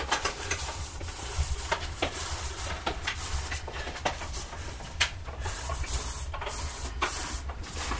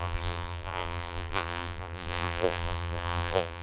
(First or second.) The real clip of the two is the first